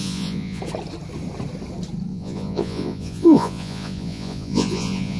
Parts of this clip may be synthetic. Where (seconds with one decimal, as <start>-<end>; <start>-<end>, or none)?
0.0-0.6; 2.1-5.2